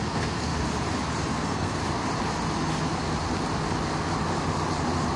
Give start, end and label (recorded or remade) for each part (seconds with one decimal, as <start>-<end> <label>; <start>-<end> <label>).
0.0-0.5 remade; 0.5-1.3 recorded; 1.3-1.8 remade; 1.8-5.2 recorded